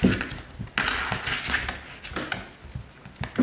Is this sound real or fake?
real